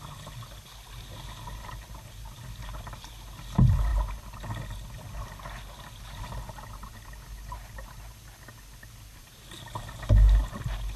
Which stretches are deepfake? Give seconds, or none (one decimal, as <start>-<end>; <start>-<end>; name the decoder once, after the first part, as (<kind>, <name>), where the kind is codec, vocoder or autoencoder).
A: none